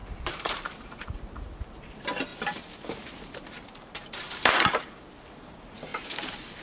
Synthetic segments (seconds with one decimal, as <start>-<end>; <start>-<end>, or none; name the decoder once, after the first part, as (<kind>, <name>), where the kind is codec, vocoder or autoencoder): 0.0-0.8 (vocoder, BigVGAN v2); 2.3-4.9; 5.9-6.6